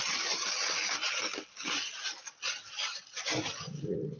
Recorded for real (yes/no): yes